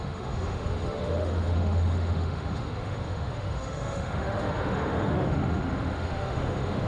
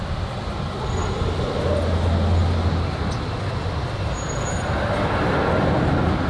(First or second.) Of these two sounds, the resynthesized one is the first